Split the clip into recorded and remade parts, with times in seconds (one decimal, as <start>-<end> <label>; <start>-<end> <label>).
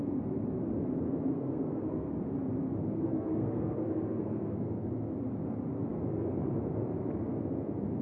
0.0-1.3 recorded; 1.3-2.2 remade; 2.2-2.8 recorded; 2.8-4.9 remade; 4.9-8.0 recorded